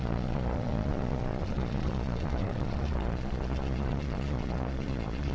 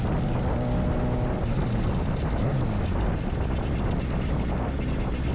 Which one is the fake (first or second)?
first